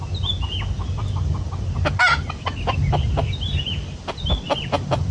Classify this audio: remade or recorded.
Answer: recorded